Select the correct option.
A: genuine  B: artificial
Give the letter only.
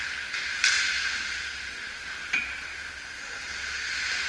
A